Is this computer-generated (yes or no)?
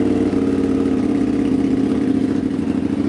no